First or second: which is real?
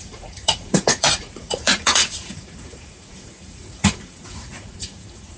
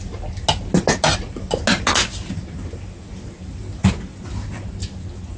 second